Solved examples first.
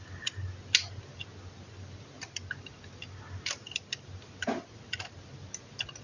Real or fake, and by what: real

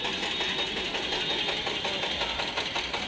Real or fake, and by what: real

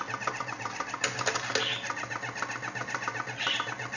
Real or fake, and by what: real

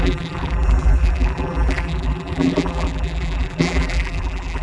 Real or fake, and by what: fake, vocoder, BigVGAN v2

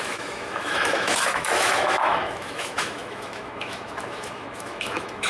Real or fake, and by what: fake, autoencoder, DAC-VAE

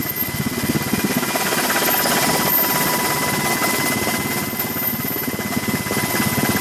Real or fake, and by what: real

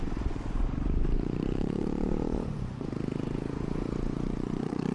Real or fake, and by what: fake, vocoder, Vocos